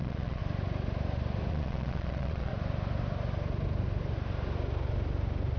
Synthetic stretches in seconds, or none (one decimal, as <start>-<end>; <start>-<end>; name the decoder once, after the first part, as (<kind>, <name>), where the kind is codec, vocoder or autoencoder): 0.0-0.4 (vocoder, Vocos); 1.5-2.5